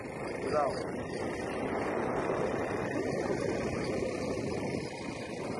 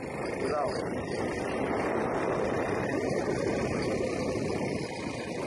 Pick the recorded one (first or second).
first